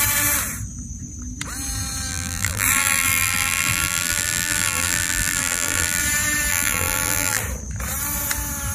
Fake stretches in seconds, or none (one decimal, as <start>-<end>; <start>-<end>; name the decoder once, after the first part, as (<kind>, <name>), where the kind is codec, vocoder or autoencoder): 2.1-6.0 (vocoder, BigVGAN v2); 6.5-7.4